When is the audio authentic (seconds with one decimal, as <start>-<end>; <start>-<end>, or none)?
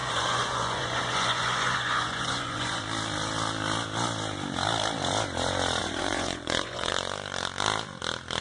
2.8-5.8; 6.9-8.4